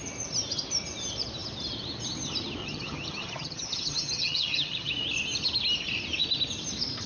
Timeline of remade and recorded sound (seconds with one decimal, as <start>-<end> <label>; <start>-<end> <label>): 0.0-2.6 recorded; 2.6-4.9 remade; 4.9-7.1 recorded